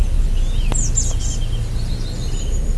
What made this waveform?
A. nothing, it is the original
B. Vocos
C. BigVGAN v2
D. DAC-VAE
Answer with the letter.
A